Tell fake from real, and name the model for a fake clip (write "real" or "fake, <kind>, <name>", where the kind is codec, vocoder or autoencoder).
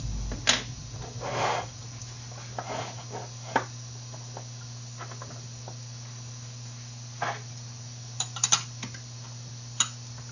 real